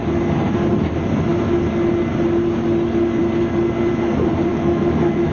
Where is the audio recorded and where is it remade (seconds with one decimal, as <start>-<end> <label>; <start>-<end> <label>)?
0.0-4.5 recorded; 4.5-5.3 remade